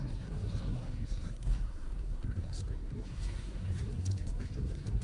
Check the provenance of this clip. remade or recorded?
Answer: remade